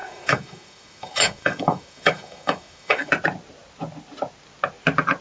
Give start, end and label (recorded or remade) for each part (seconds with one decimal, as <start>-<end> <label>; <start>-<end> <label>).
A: 0.0-3.1 remade; 3.1-5.2 recorded